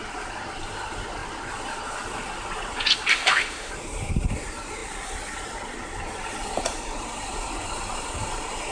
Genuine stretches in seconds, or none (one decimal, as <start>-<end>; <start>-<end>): 0.0-3.1; 3.7-8.7